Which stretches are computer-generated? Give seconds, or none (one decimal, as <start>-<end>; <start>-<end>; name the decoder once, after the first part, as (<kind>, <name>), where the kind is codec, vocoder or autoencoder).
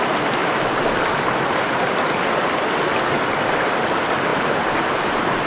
4.3-5.5 (vocoder, BigVGAN v2)